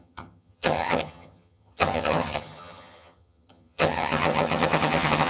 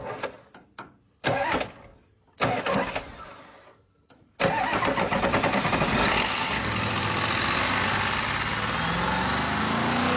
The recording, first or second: second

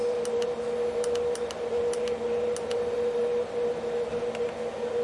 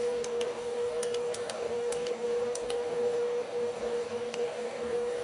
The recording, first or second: first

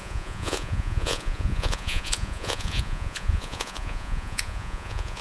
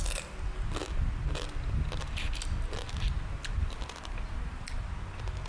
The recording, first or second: second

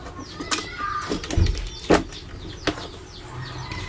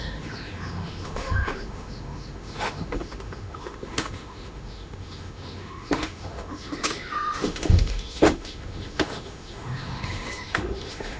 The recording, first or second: first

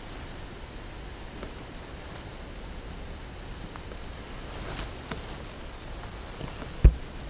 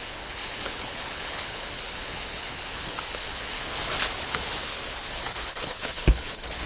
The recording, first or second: first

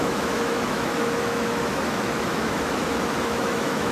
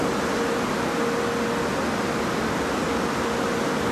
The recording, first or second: second